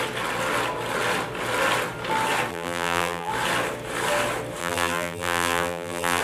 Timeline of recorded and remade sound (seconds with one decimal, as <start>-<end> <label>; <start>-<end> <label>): 0.0-2.5 recorded; 2.5-3.3 remade; 3.3-4.6 recorded; 4.6-6.2 remade